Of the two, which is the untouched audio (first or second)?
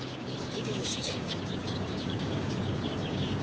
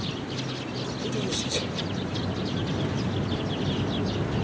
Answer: second